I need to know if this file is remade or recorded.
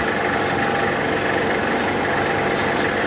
recorded